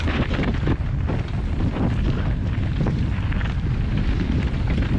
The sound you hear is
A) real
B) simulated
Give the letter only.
A